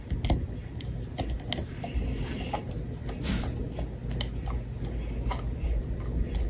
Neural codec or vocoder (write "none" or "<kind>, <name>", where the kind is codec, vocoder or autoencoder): none